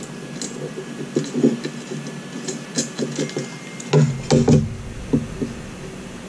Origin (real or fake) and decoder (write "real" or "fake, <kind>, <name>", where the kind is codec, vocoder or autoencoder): real